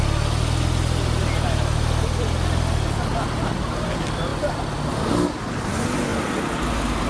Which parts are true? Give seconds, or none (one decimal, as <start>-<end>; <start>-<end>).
0.0-7.1